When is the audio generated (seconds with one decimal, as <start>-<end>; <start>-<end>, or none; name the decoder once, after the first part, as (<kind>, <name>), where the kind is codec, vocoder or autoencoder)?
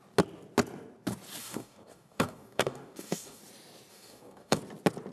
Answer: 1.4-3.4 (codec, DAC); 3.9-4.6